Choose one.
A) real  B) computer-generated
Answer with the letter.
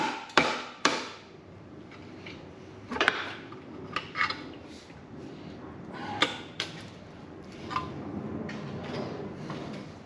B